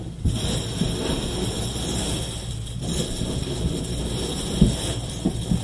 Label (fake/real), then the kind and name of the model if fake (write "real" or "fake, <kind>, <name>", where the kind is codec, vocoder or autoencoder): real